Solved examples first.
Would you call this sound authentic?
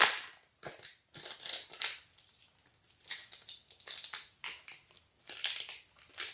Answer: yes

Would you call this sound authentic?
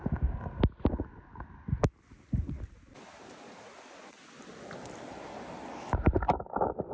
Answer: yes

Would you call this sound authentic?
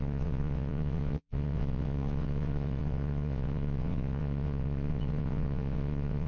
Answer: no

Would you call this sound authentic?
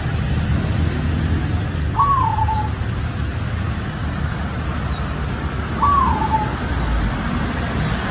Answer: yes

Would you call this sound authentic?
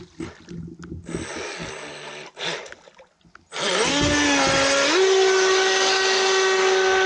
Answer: yes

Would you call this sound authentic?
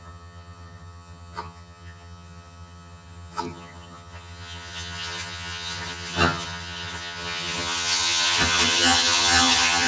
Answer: no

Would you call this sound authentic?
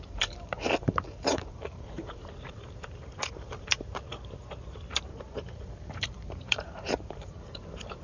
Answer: no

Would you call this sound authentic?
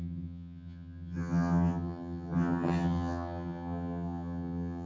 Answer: no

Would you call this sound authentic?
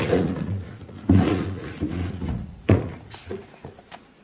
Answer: no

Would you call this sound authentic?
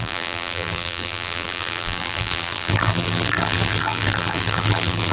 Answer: no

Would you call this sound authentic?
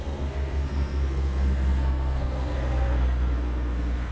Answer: no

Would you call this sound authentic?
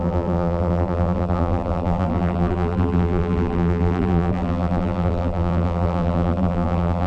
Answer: no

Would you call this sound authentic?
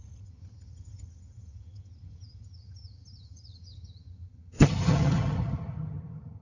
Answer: no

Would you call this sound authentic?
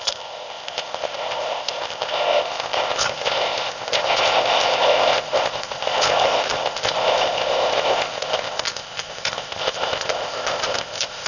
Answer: no